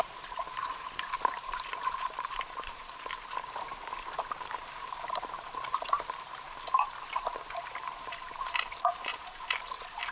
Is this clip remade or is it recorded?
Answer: remade